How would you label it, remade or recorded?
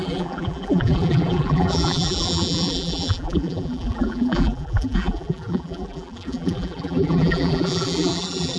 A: remade